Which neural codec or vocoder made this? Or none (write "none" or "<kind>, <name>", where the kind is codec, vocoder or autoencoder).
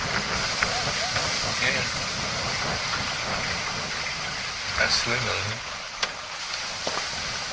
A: none